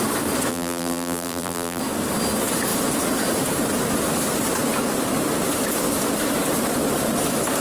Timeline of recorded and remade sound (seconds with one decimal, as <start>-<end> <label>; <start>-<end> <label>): 0.0-0.5 recorded; 0.5-1.8 remade; 1.8-7.6 recorded